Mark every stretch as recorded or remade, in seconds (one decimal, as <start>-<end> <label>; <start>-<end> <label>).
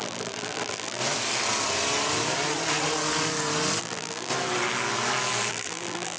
0.0-1.0 remade; 1.0-3.8 recorded; 3.8-4.3 remade; 4.3-5.5 recorded; 5.5-6.2 remade